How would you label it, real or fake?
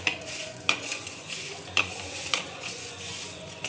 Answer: fake